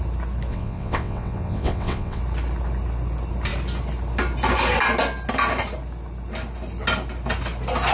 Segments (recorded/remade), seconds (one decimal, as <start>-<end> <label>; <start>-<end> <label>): 0.0-0.5 recorded; 0.5-2.2 remade; 2.2-7.9 recorded

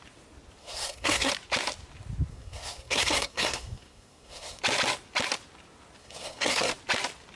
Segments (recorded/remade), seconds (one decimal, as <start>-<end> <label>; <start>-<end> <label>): 0.0-0.6 recorded; 0.6-1.3 remade; 1.3-2.3 recorded; 2.3-4.6 remade; 4.6-6.0 recorded; 6.0-6.7 remade; 6.7-7.4 recorded

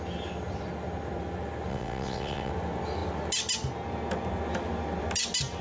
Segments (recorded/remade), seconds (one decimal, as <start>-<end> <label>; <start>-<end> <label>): 0.0-1.7 recorded; 1.7-2.5 remade; 2.5-5.6 recorded

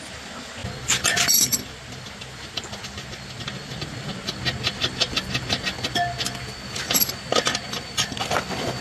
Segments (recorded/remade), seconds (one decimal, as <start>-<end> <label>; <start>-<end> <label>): 0.0-8.8 recorded